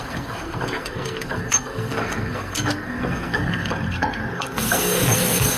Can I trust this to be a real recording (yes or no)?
no